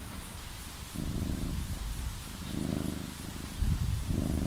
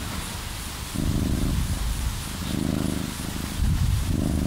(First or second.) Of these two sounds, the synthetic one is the first